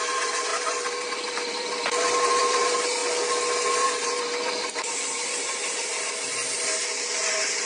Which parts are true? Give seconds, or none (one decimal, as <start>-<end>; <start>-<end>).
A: 3.0-3.7; 6.4-7.2